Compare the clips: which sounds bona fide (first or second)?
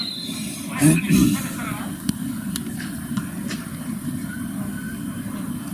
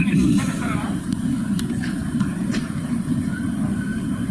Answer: first